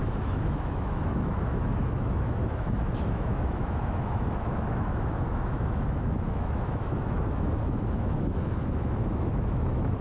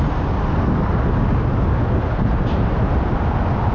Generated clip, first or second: first